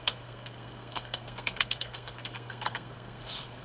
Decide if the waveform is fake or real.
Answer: fake